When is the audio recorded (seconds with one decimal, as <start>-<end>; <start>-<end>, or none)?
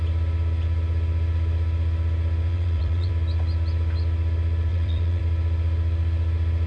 0.0-2.5; 3.1-4.7; 5.2-6.7